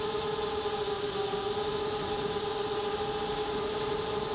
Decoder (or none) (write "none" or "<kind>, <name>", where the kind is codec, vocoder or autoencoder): none